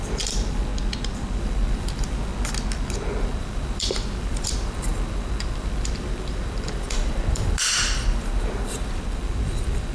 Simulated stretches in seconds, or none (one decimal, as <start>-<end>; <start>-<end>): 0.0-0.7; 1.4-2.3; 3.2-9.9

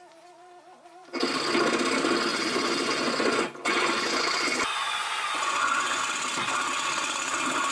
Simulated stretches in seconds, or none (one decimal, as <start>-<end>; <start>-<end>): 2.3-6.0

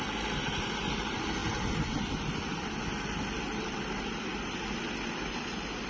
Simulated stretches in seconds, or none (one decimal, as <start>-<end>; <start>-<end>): none